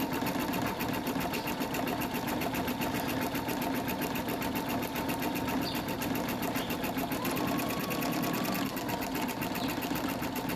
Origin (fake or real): real